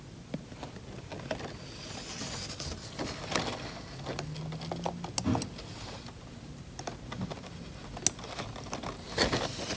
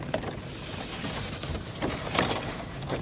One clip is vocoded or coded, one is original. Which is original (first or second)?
first